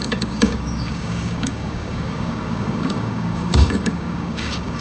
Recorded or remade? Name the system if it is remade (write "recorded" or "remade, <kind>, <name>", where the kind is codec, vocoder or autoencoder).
remade, codec, DAC